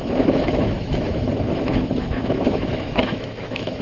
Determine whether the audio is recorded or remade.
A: remade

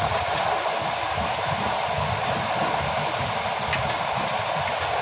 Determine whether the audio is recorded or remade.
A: remade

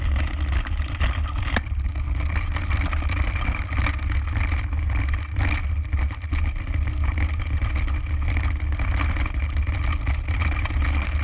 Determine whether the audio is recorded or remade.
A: recorded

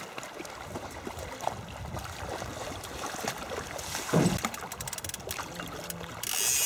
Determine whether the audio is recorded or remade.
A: recorded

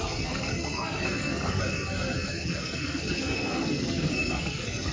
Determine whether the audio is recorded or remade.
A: remade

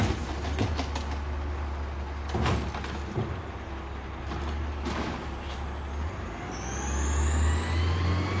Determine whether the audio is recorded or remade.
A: recorded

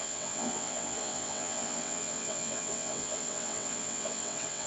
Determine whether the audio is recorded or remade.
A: remade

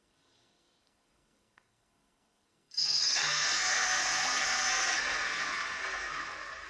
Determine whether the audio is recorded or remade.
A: remade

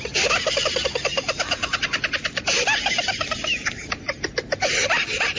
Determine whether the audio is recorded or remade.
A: recorded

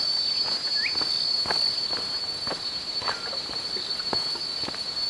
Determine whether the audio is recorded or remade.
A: recorded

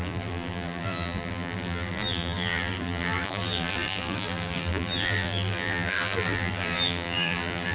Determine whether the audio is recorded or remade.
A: remade